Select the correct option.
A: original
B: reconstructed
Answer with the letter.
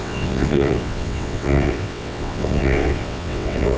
B